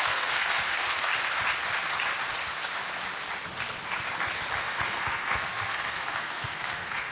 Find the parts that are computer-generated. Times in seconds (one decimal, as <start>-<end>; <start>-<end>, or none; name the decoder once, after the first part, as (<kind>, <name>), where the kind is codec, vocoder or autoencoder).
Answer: 0.0-1.1 (codec, SNAC); 4.6-7.1

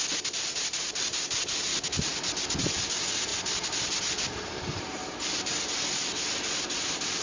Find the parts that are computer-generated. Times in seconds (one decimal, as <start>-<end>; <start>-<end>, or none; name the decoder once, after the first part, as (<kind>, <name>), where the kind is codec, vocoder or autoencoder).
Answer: none

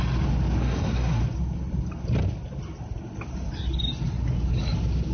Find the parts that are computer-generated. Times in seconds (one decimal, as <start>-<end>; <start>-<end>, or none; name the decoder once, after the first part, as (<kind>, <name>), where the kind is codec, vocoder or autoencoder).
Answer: 0.6-1.2 (codec, SNAC)

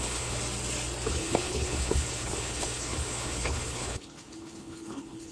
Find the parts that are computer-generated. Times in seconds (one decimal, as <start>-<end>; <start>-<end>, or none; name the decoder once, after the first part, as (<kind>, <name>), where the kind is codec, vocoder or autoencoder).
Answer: 0.0-0.4 (codec, HILCodec); 1.1-5.3

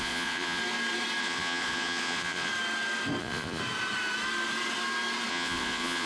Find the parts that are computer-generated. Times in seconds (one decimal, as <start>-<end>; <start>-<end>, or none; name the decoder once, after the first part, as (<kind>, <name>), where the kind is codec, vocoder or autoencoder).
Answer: 0.0-0.6 (vocoder, Vocos); 1.2-2.5; 3.2-3.6; 5.3-6.1

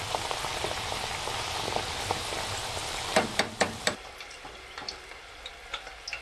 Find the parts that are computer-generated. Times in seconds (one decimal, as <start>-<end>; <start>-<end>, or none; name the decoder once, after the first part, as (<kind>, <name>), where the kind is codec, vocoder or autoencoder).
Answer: 2.8-5.2 (vocoder, BigVGAN v2)

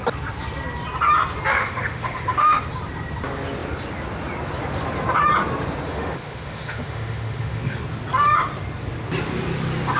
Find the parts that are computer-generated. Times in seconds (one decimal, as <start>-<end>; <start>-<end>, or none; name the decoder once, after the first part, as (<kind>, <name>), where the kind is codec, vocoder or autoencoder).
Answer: 1.5-2.6 (autoencoder, DAC-VAE); 5.9-7.8